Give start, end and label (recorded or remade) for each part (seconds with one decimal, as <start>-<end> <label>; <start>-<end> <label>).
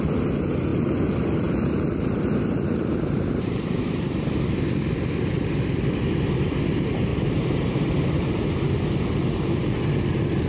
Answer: 0.0-0.7 recorded; 0.7-4.5 remade; 4.5-7.1 recorded; 7.1-8.3 remade; 8.3-10.5 recorded